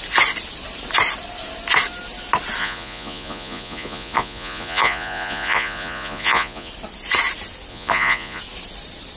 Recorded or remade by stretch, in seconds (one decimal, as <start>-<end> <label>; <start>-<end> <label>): 0.0-2.6 recorded; 2.6-6.7 remade; 6.7-7.7 recorded; 7.7-8.4 remade; 8.4-9.2 recorded